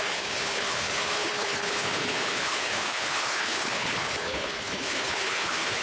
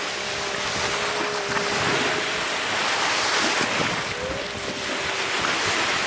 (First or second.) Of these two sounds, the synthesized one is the first